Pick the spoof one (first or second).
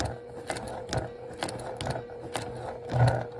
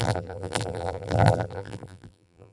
second